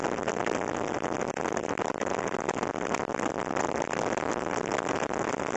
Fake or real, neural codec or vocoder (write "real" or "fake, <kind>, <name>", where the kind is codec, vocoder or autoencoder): real